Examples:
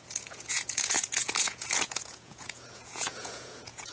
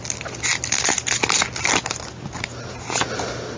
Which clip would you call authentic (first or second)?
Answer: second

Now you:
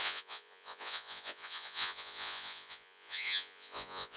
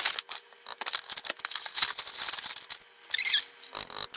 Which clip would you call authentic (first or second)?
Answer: second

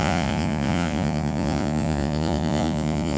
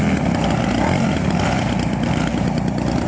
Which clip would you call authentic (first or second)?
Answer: second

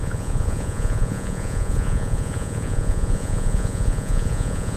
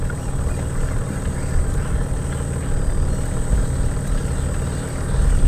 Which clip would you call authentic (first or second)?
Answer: second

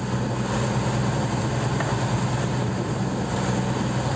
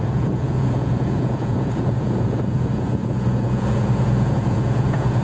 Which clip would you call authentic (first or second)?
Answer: first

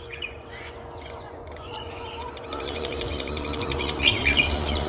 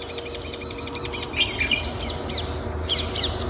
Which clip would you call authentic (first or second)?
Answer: second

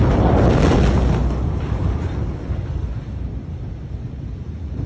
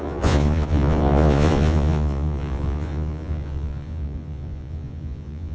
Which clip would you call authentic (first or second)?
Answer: first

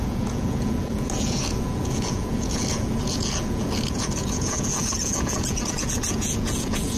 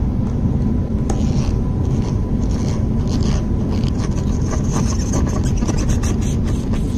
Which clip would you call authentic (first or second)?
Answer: second